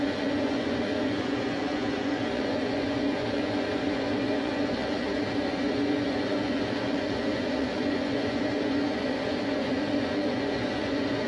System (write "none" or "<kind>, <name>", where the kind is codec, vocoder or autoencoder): vocoder, Vocos